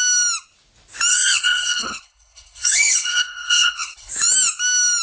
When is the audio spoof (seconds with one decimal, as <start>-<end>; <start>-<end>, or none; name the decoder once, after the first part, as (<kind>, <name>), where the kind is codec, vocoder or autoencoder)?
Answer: 1.1-4.1 (codec, HILCodec)